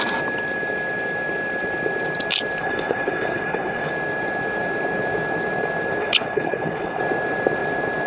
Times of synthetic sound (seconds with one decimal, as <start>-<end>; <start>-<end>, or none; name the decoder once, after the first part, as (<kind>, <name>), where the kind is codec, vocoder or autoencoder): 2.6-3.9 (codec, HILCodec); 6.0-7.0